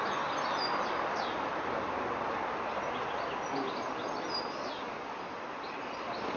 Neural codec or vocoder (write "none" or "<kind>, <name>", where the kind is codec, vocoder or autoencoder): none